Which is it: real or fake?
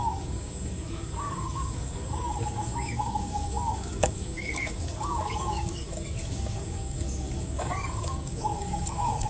fake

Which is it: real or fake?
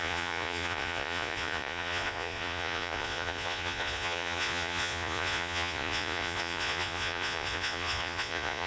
fake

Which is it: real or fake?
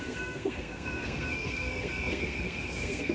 fake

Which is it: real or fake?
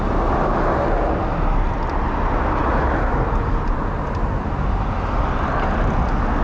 real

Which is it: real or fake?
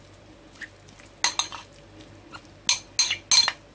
real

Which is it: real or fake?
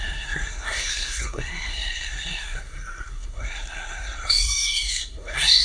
fake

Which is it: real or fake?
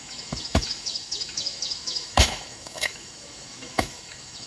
fake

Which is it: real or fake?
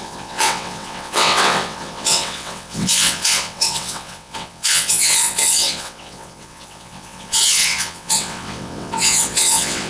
fake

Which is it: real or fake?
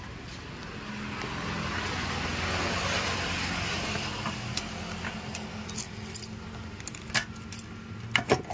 real